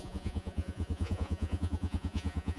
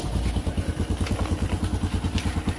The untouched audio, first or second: second